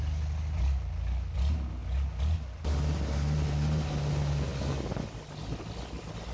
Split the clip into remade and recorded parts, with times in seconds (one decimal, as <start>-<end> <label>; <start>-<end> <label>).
0.0-6.3 recorded

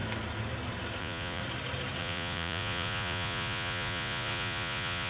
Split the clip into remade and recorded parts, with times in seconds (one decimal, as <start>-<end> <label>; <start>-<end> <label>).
0.0-1.0 recorded; 1.0-1.4 remade; 1.4-2.0 recorded; 2.0-5.1 remade

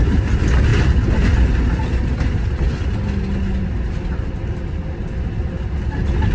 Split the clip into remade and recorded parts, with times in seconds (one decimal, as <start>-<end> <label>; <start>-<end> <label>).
0.0-6.3 recorded

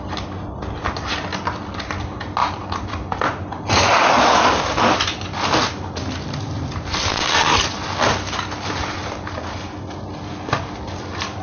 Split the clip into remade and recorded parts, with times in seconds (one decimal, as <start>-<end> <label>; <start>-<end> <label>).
0.0-11.4 recorded